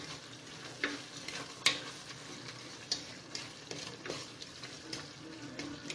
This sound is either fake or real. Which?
real